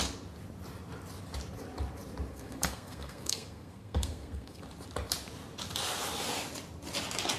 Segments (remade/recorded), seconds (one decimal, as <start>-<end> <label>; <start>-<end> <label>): 0.0-2.3 recorded; 2.3-4.6 remade; 4.6-7.4 recorded